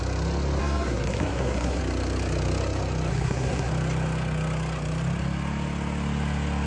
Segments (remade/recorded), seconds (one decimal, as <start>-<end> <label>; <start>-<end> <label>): 0.0-0.6 recorded; 0.6-1.8 remade; 1.8-3.1 recorded; 3.1-3.7 remade; 3.7-6.7 recorded